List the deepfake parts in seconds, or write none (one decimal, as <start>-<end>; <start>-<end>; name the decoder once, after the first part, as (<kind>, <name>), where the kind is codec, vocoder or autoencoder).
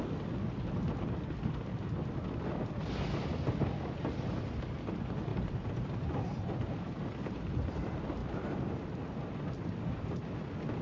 5.3-7.7 (vocoder, BigVGAN v2); 8.2-8.9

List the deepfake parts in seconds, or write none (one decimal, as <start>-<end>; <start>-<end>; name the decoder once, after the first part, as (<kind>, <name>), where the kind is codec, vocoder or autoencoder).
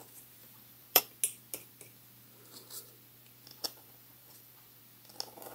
0.4-1.0 (vocoder, BigVGAN v2); 3.5-4.8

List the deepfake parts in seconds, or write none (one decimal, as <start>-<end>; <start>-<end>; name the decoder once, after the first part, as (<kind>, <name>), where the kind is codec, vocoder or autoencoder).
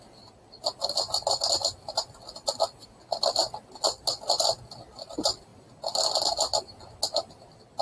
none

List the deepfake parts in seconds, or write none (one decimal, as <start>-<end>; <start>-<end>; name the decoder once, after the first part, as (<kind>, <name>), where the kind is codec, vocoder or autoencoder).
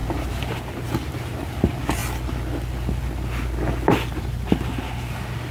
0.0-1.5 (vocoder, BigVGAN v2)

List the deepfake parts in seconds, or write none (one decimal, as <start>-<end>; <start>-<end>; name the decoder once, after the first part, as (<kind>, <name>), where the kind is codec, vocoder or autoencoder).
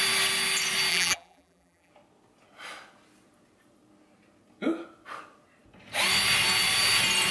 0.9-1.9 (vocoder, BigVGAN v2)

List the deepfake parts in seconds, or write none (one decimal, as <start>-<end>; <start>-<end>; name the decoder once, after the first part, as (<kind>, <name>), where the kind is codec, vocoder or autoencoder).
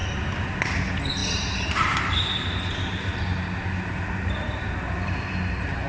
1.2-4.7 (vocoder, BigVGAN v2)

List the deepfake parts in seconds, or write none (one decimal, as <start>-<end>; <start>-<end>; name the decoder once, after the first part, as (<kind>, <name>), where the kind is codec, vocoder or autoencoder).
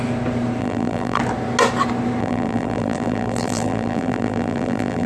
0.6-1.2 (vocoder, BigVGAN v2); 2.2-5.1